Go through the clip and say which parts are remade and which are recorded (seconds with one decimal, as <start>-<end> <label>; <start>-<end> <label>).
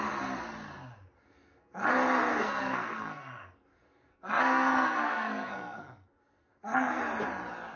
0.0-1.2 recorded; 1.2-1.9 remade; 1.9-2.3 recorded; 2.3-7.0 remade; 7.0-7.8 recorded